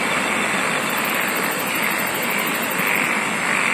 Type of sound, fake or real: real